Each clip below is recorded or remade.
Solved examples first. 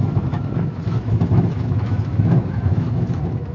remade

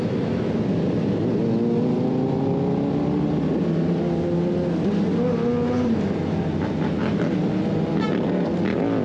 recorded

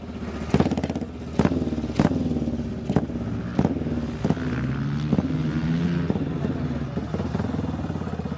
recorded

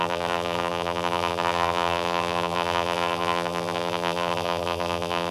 remade